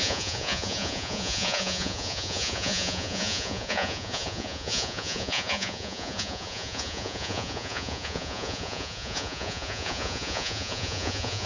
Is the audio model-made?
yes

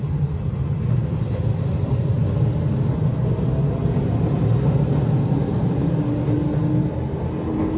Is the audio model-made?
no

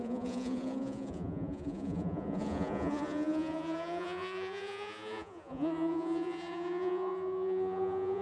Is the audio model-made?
yes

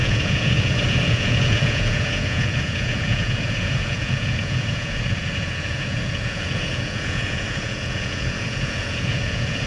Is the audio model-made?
yes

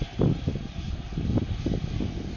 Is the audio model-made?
no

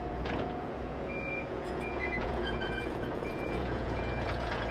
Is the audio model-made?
yes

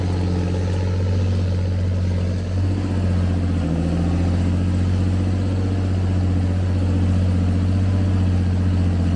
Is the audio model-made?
no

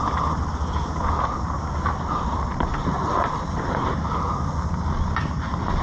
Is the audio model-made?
no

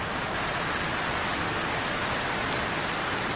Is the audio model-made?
no